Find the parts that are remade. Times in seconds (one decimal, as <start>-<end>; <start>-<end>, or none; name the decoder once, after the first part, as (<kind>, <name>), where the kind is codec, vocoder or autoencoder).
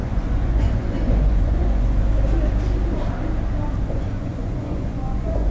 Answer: 0.0-2.0 (vocoder, Vocos); 3.8-5.5